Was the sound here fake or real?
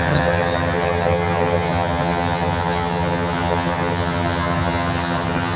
fake